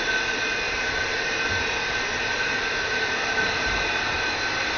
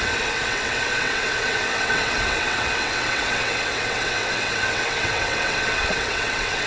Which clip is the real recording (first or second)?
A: first